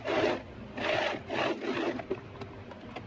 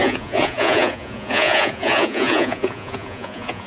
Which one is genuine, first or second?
first